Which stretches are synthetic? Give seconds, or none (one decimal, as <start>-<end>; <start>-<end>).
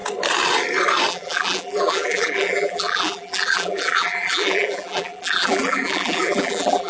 1.1-6.9